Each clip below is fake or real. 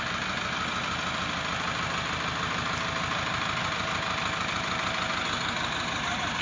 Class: real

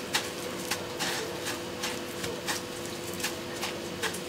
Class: real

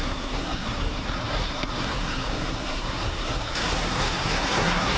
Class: fake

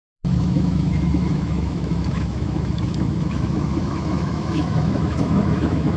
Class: fake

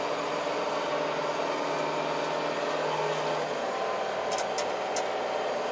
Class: real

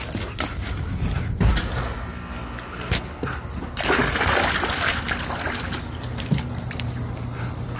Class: real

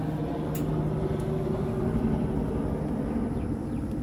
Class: real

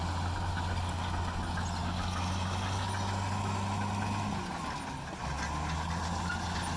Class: real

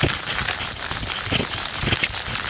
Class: real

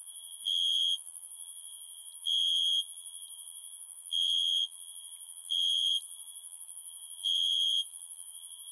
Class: fake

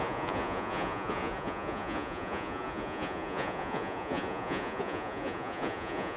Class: fake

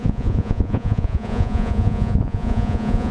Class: fake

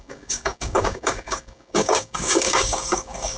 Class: fake